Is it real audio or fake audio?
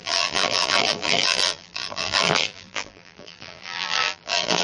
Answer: fake